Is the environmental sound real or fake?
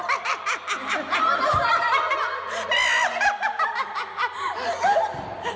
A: real